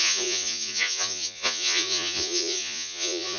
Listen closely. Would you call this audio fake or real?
fake